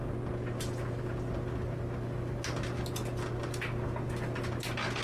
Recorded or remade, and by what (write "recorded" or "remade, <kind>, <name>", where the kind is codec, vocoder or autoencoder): recorded